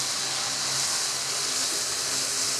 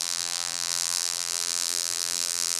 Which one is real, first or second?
first